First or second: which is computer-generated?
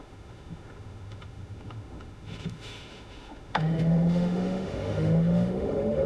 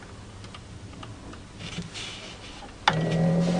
first